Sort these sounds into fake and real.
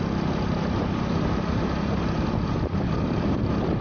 real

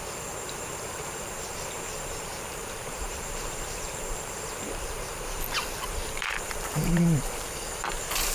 fake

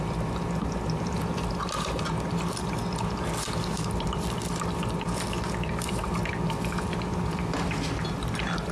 real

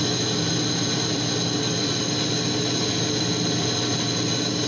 real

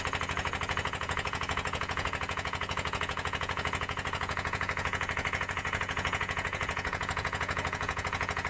fake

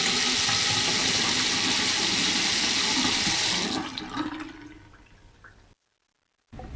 real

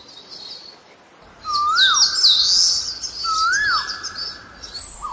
real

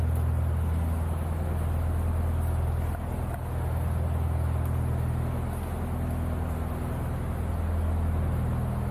real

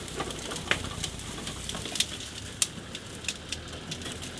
real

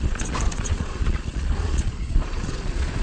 fake